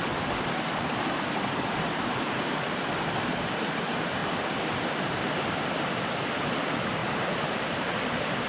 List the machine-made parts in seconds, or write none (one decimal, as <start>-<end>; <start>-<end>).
none